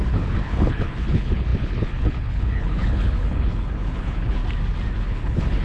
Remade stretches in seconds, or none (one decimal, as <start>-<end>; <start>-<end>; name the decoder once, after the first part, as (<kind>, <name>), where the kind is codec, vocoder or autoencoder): 0.0-4.4 (codec, HILCodec); 5.0-5.6